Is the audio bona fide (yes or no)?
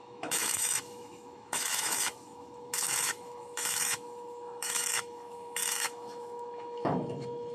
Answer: no